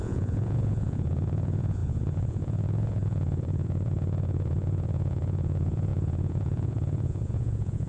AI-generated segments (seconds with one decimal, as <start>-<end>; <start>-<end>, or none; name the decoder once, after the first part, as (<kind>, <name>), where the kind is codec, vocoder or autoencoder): 0.0-7.9 (vocoder, Vocos)